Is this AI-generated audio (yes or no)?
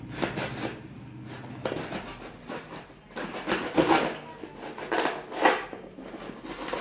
no